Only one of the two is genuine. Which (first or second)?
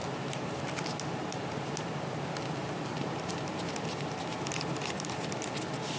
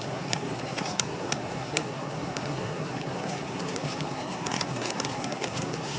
first